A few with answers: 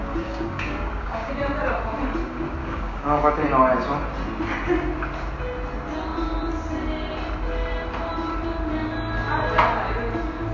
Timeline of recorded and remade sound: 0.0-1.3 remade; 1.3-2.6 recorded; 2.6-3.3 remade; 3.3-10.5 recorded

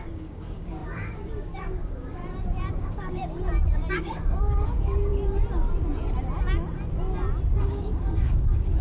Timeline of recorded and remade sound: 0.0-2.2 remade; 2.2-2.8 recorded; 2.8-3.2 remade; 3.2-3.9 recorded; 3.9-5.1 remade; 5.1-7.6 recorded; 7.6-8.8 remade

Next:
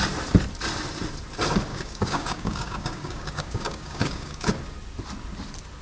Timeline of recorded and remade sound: 0.0-1.7 recorded; 1.7-4.5 remade; 4.5-5.8 recorded

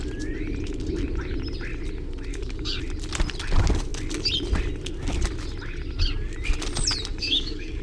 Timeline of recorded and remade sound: 0.0-2.3 recorded; 2.3-2.8 remade; 2.8-7.1 recorded; 7.1-7.8 remade

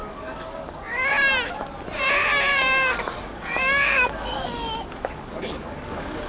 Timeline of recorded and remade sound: 0.0-1.1 remade; 1.1-2.5 recorded; 2.5-6.3 remade

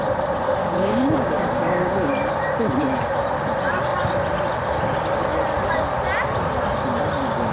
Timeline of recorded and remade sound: 0.0-0.6 recorded; 0.6-2.1 remade; 2.1-7.5 recorded

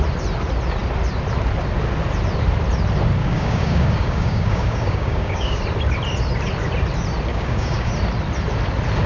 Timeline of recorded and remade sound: 0.0-3.2 recorded; 3.2-5.6 remade; 5.6-7.3 recorded; 7.3-7.9 remade; 7.9-9.1 recorded